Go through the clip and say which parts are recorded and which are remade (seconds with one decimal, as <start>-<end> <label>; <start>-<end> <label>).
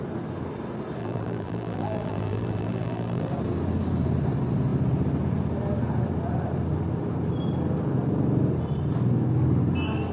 0.0-1.0 recorded; 1.0-3.3 remade; 3.3-10.1 recorded